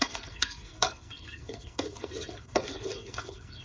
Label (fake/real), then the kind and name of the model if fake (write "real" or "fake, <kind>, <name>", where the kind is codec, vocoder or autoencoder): fake, codec, SNAC